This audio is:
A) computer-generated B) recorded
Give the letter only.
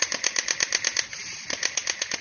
B